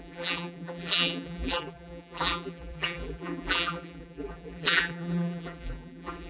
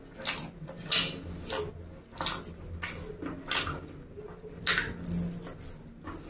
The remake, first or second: first